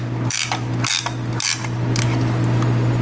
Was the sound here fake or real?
real